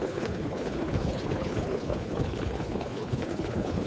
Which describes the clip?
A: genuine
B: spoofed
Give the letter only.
B